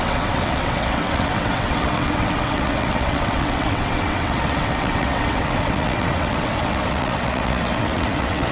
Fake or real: fake